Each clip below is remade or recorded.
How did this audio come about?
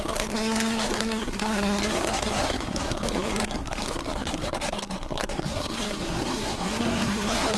remade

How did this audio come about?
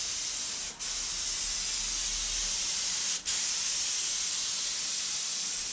recorded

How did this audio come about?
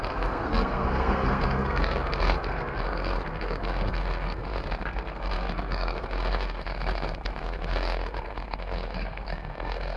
remade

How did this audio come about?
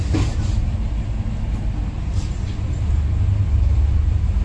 recorded